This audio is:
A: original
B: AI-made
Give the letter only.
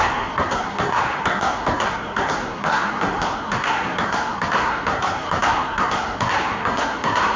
B